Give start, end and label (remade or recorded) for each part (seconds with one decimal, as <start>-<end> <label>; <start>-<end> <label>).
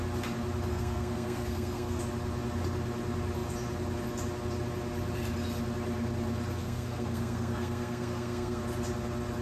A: 0.0-0.7 recorded; 0.7-2.0 remade; 2.0-6.6 recorded; 6.6-8.6 remade; 8.6-9.4 recorded